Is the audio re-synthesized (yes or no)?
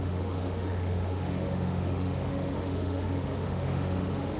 yes